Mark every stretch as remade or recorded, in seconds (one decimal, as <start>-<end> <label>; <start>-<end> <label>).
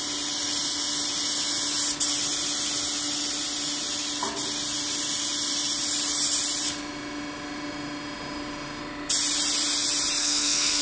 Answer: 0.0-10.2 recorded; 10.2-10.8 remade